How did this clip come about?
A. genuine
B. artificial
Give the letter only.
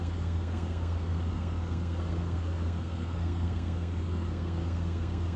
B